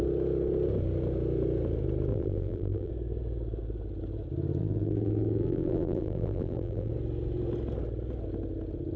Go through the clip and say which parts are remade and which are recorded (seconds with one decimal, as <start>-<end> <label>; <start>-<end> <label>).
0.0-2.1 recorded; 2.1-2.9 remade; 2.9-4.6 recorded; 4.6-6.9 remade; 6.9-9.0 recorded